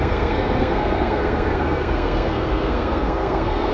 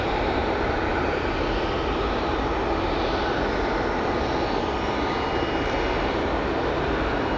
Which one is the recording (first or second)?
second